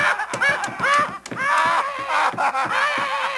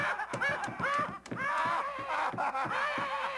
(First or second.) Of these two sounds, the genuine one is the first